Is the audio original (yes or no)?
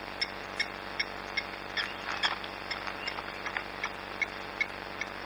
yes